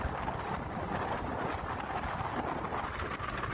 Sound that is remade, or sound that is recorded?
recorded